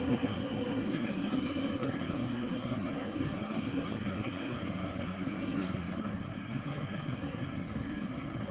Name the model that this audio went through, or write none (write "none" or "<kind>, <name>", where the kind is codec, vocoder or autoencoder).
codec, SNAC